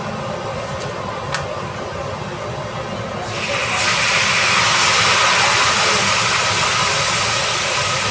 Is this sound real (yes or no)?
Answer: yes